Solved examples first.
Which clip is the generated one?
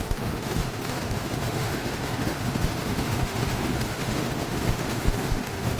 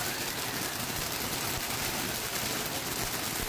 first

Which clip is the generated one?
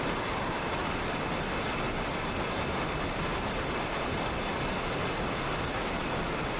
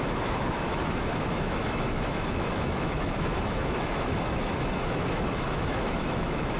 second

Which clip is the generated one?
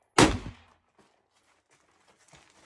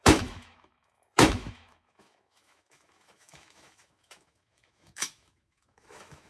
second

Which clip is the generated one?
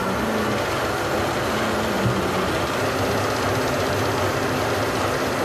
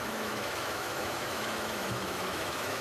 second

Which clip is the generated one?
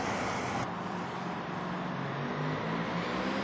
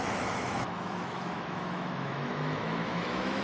second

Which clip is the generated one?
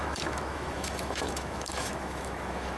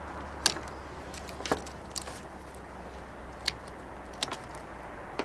first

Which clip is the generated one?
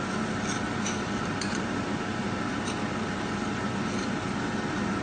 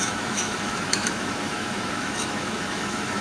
second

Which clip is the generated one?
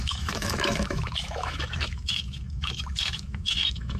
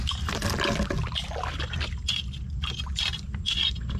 first